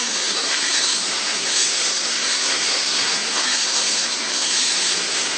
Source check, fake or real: fake